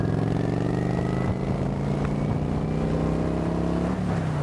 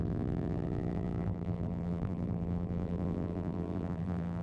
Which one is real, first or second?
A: first